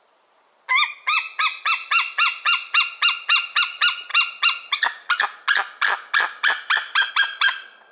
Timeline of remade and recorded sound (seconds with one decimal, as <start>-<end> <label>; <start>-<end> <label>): 0.0-7.9 recorded